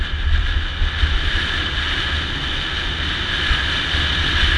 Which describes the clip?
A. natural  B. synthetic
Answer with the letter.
A